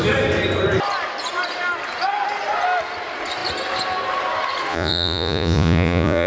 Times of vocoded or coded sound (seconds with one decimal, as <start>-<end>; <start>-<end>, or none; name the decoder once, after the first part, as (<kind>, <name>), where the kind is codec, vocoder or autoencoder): 4.7-6.3 (vocoder, Vocos)